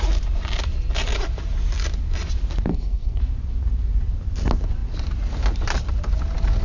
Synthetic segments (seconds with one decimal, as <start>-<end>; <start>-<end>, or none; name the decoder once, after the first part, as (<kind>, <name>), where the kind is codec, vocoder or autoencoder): 2.7-3.2 (codec, SNAC)